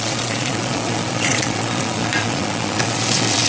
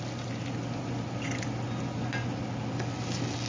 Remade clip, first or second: first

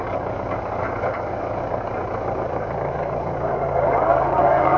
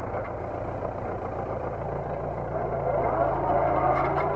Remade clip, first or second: first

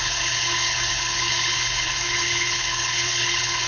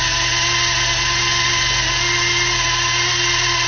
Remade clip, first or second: first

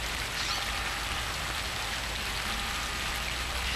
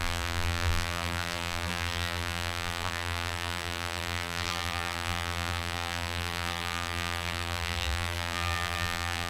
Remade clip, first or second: second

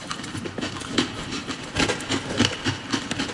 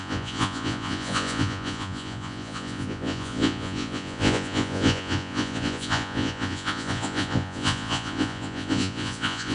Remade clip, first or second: second